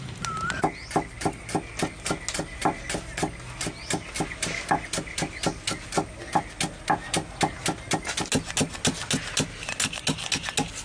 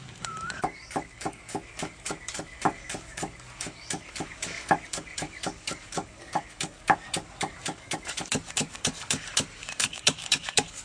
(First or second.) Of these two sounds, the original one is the first